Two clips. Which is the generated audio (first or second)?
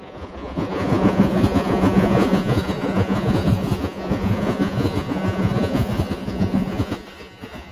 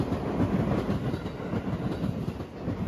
first